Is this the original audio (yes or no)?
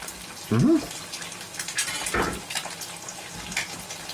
yes